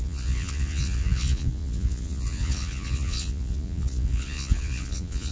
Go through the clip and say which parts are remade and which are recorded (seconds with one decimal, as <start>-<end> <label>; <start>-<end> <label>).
0.0-5.3 remade